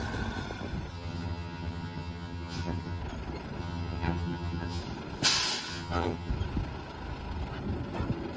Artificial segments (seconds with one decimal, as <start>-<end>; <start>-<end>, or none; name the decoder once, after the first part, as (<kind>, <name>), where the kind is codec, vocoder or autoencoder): 0.9-3.0 (vocoder, HiFi-GAN); 3.6-4.8; 5.7-6.3